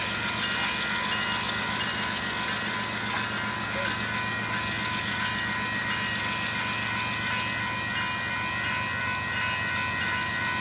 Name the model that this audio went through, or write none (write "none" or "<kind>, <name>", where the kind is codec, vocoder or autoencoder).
none